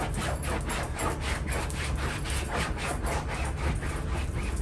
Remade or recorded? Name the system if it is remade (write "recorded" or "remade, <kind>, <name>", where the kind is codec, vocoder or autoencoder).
recorded